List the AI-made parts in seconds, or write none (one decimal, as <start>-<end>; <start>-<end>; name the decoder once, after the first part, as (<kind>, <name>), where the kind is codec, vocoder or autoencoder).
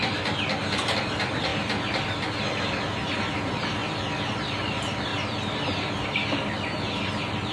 0.0-1.5 (vocoder, BigVGAN v2); 3.4-5.1; 7.1-7.5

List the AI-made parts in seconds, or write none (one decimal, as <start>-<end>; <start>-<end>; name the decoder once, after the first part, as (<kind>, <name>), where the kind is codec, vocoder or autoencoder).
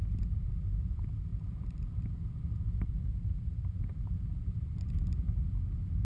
1.3-4.9 (vocoder, BigVGAN v2)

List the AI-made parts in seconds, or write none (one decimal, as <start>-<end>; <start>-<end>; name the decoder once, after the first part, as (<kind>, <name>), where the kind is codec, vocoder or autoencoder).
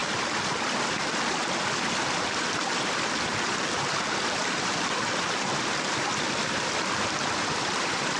2.6-8.2 (vocoder, BigVGAN v2)